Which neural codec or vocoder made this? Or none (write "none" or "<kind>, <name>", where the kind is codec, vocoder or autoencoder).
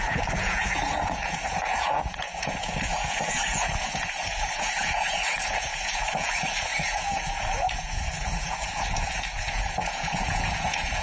vocoder, Vocos